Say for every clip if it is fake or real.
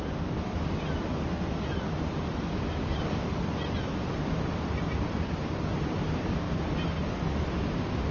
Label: real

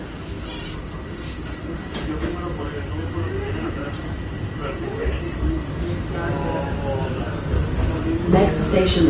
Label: real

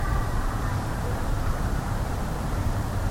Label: fake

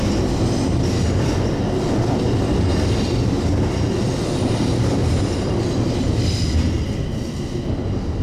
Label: real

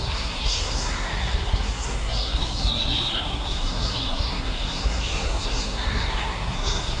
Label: fake